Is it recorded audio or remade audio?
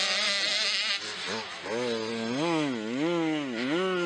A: recorded